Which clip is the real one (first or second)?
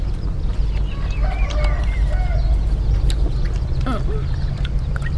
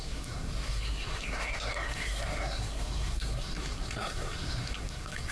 first